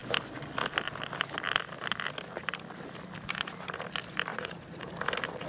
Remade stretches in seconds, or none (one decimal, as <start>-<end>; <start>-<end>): 4.3-4.9

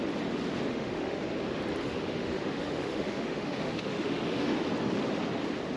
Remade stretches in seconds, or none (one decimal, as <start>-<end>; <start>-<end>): 0.7-1.2; 1.8-4.6

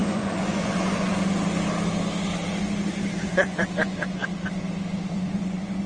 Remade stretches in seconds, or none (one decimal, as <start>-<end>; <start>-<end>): 0.0-1.1; 3.3-4.3; 5.1-5.9

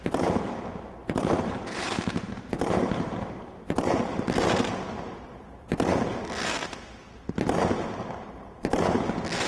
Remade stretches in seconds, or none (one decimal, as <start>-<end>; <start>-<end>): 1.0-3.6

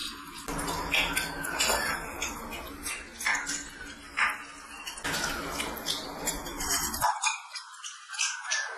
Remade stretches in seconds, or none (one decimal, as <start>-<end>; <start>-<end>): none

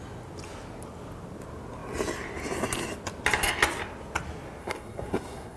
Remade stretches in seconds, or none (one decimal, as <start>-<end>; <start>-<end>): 4.6-5.6

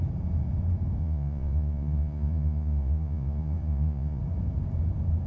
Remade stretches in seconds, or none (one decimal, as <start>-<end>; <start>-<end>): 1.0-4.2

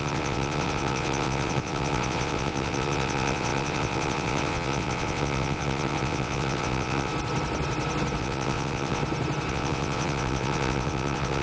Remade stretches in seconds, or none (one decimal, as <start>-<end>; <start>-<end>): 0.0-7.1; 8.2-9.0; 9.5-11.4